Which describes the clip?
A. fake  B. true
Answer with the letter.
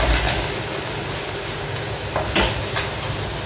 B